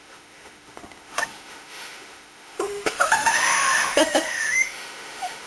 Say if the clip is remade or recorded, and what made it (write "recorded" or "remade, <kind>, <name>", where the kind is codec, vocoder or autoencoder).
remade, autoencoder, DAC-VAE